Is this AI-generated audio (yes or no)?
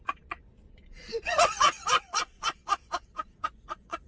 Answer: yes